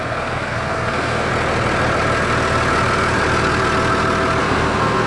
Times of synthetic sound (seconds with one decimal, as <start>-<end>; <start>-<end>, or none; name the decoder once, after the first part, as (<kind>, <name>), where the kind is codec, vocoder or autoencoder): 0.0-1.3 (codec, SNAC); 4.4-5.1